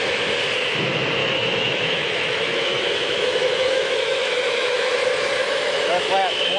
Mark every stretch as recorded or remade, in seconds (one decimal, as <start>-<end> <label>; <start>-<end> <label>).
0.0-1.2 recorded; 1.2-4.9 remade; 4.9-5.4 recorded; 5.4-6.6 remade